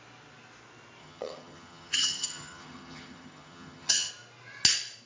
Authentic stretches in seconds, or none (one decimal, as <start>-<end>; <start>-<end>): 0.0-1.0; 4.1-5.1